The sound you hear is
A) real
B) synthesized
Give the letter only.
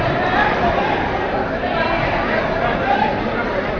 B